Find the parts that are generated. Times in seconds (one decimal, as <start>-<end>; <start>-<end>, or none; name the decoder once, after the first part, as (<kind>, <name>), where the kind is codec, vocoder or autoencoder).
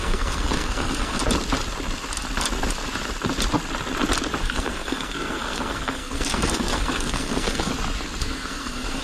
0.0-1.2 (codec, SNAC); 4.4-7.7; 8.2-9.0